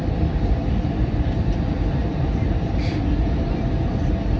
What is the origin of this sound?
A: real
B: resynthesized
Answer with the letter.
A